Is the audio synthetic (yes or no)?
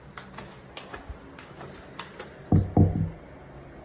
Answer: no